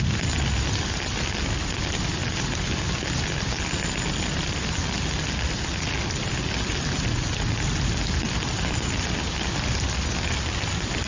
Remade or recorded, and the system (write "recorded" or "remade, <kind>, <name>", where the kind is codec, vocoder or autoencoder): recorded